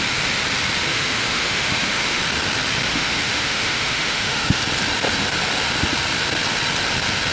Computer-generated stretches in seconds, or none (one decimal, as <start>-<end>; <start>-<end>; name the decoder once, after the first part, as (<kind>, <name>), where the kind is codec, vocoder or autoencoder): 0.9-2.2 (autoencoder, DAC-VAE); 2.9-4.6